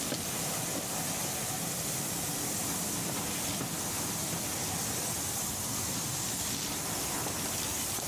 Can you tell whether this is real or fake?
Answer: real